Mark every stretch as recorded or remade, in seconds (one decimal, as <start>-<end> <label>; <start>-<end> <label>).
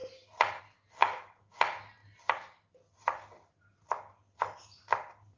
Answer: 0.0-1.0 recorded; 1.0-1.6 remade; 1.6-5.4 recorded